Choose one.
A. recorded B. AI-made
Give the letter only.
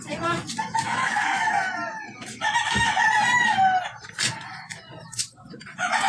A